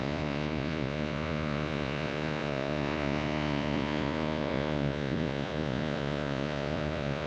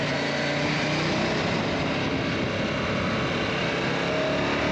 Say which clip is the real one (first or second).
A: second